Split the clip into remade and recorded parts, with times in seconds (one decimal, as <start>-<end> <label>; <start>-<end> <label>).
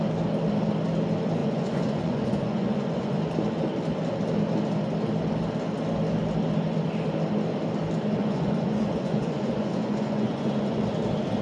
0.0-1.4 recorded; 1.4-3.2 remade; 3.2-8.2 recorded; 8.2-10.8 remade; 10.8-11.4 recorded